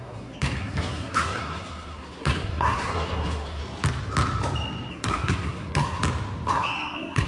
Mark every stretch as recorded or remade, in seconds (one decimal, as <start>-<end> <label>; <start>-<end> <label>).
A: 0.0-3.6 remade; 3.6-4.9 recorded; 4.9-6.0 remade; 6.0-6.5 recorded; 6.5-7.3 remade